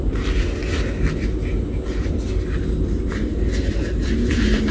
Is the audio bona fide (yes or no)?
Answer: yes